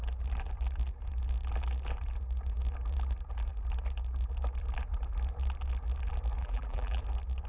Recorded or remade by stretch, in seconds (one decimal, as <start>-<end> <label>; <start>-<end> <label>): 0.0-6.4 recorded; 6.4-7.0 remade; 7.0-7.5 recorded

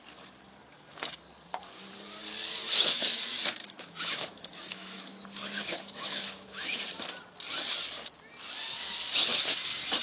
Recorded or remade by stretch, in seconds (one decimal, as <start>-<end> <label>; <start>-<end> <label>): 0.0-2.6 recorded; 2.6-3.2 remade; 3.2-3.6 recorded; 3.6-6.8 remade; 6.8-10.0 recorded

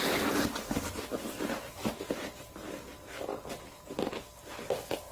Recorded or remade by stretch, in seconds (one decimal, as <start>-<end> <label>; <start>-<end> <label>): 0.0-5.1 recorded